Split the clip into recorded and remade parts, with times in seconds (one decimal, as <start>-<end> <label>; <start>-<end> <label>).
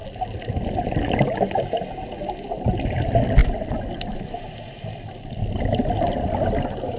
0.0-7.0 recorded